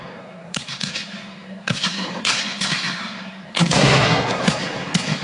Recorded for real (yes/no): no